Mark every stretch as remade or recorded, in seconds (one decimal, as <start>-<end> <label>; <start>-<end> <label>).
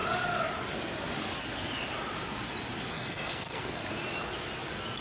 0.0-2.9 recorded; 2.9-3.8 remade; 3.8-5.0 recorded